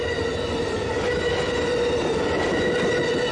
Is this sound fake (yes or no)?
no